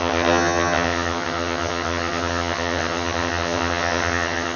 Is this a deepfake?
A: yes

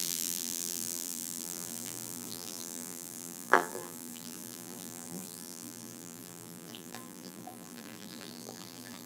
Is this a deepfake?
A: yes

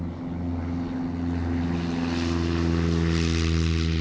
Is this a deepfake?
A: no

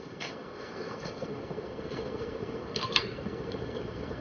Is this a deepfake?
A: yes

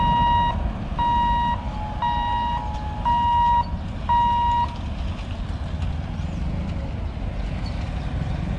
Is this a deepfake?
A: no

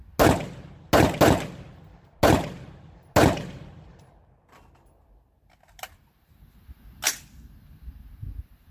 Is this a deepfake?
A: no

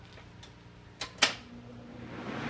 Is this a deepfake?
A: no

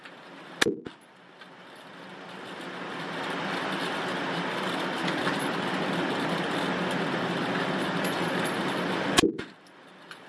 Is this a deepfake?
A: no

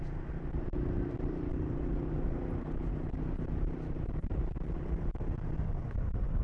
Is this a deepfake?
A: yes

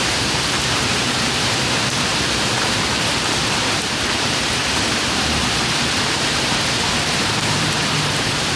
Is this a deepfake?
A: yes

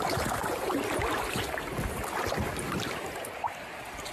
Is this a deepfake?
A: no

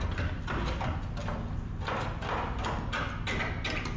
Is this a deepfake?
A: no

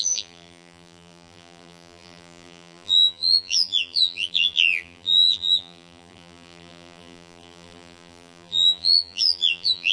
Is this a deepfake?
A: yes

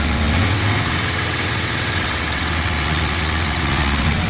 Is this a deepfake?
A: yes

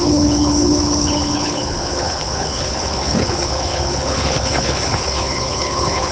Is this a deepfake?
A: yes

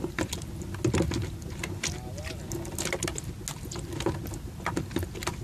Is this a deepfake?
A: no